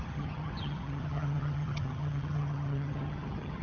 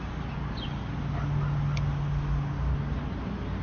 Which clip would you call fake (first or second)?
first